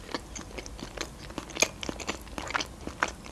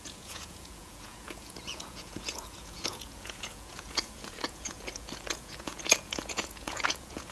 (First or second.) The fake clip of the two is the second